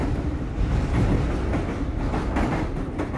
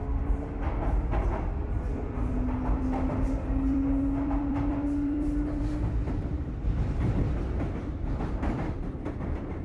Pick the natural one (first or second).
first